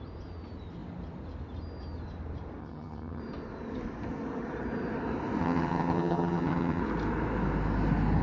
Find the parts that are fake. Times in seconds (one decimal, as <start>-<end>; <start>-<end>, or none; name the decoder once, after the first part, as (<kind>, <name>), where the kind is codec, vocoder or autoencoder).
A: 2.6-3.2 (vocoder, HiFi-GAN); 5.4-6.8